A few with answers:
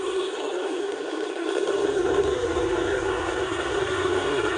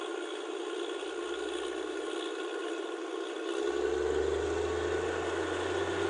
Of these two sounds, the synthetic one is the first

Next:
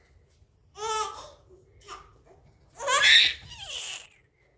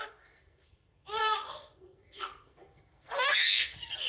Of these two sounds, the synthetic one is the second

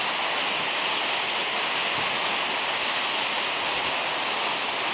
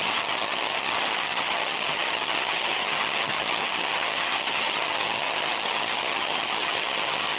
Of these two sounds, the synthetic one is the second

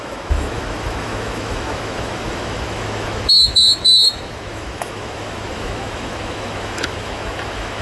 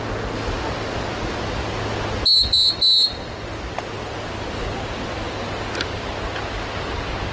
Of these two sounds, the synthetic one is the first